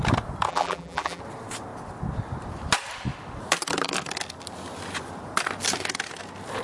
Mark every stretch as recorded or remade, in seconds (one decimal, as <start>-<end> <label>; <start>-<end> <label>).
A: 0.0-0.5 recorded; 0.5-1.2 remade; 1.2-6.6 recorded